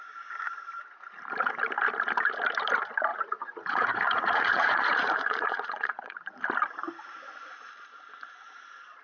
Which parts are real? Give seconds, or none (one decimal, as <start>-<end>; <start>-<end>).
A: 0.0-3.1; 6.2-9.0